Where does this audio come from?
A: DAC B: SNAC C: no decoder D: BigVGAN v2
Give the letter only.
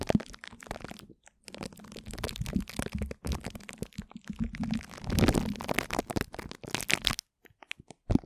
C